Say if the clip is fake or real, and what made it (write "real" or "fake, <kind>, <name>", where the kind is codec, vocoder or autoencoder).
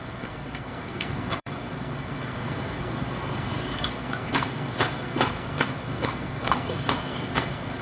fake, codec, SNAC